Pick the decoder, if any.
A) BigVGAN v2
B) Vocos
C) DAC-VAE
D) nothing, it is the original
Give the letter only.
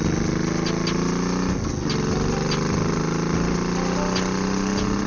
D